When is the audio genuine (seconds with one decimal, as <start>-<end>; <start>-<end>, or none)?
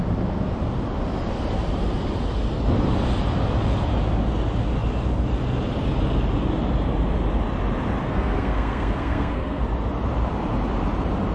0.0-8.0; 9.6-11.3